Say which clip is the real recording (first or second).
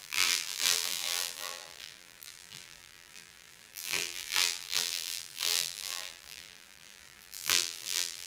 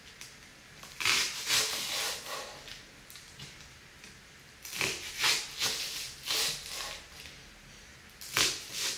second